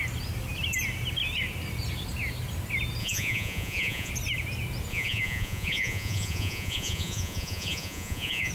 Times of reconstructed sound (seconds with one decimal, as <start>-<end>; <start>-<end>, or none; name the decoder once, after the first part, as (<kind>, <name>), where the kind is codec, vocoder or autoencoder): 3.0-4.1 (vocoder, Vocos); 4.9-8.5